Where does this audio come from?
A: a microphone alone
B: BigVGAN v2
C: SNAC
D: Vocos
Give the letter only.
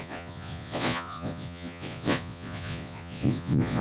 D